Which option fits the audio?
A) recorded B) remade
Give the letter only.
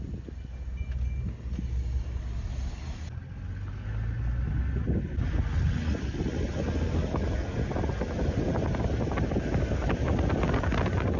A